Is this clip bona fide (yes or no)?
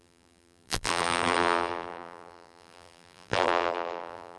no